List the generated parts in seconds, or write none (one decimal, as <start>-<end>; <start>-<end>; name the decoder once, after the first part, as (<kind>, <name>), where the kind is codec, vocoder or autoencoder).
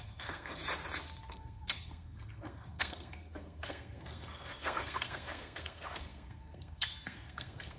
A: 0.0-0.6 (codec, SNAC); 1.3-7.8